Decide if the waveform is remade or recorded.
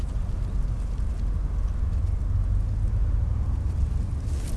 recorded